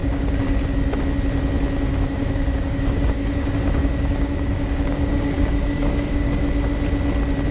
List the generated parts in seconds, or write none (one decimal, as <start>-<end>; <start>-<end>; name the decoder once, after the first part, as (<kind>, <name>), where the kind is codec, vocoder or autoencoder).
0.0-0.6 (codec, DAC); 1.9-6.4